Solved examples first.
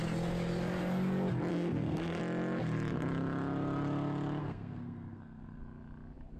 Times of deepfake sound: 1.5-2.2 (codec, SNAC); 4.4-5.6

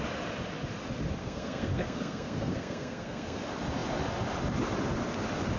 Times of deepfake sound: 1.2-3.4 (codec, SNAC)

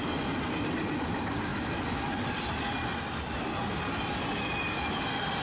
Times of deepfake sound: none

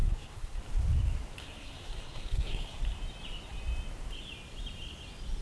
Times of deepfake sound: 0.0-0.6 (codec, SNAC); 1.4-2.8

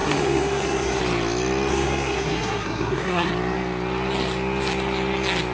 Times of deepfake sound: 0.0-1.0 (codec, SNAC); 1.7-3.3

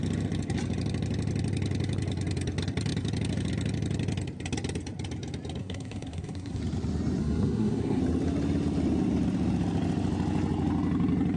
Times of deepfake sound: 5.6-6.6 (codec, SNAC); 7.2-8.0

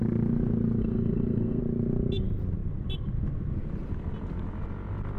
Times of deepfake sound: 0.8-1.6 (codec, SNAC)

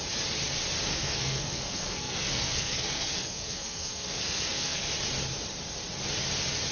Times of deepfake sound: 0.9-4.9 (codec, SNAC)